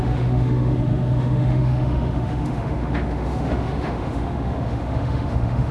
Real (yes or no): no